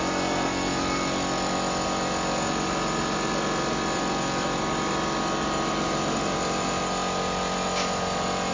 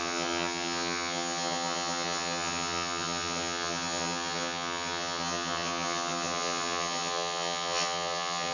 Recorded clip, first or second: first